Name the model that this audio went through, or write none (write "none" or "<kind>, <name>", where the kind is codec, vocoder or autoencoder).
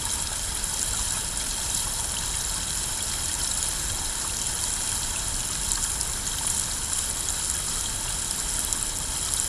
none